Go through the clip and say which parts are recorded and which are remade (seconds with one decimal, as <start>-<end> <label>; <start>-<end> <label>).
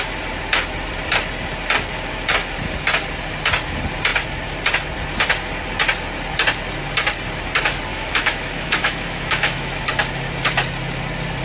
0.0-7.9 recorded; 7.9-9.9 remade; 9.9-11.4 recorded